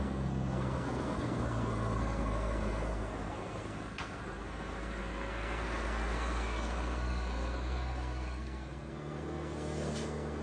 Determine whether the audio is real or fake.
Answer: fake